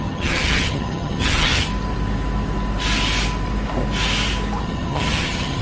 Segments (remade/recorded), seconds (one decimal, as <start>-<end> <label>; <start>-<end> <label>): 0.0-1.7 remade; 1.7-4.6 recorded; 4.6-5.6 remade